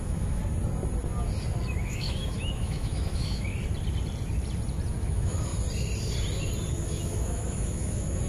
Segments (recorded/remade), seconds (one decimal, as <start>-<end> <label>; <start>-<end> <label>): 0.0-0.4 remade; 0.4-1.7 recorded; 1.7-3.5 remade; 3.5-5.0 recorded; 5.0-5.5 remade; 5.5-6.7 recorded; 6.7-8.3 remade